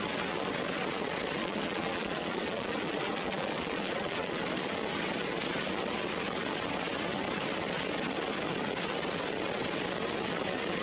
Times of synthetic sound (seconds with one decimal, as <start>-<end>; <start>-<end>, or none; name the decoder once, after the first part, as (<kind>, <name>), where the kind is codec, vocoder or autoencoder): 1.4-4.4 (vocoder, Vocos)